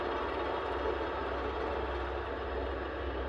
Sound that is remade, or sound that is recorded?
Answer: recorded